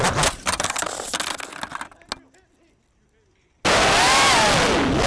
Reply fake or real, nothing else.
real